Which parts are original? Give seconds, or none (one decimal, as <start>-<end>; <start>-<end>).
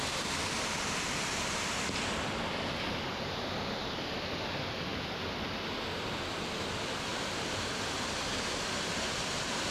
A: 0.0-9.7